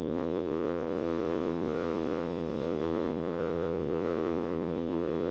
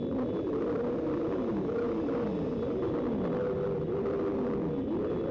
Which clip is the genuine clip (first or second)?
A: second